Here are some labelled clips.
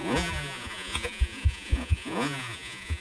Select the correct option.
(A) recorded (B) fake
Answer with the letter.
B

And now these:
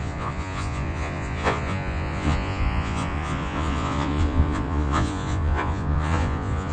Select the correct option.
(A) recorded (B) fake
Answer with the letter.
B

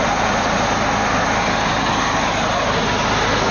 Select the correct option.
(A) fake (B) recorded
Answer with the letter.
B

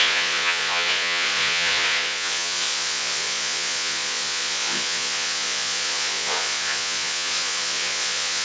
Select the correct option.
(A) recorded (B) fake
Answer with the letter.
B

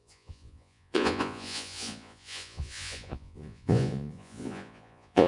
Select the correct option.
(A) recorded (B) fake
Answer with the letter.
B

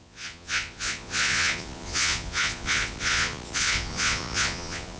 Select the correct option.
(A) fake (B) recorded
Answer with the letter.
A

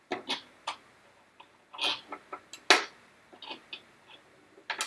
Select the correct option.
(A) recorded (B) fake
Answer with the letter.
A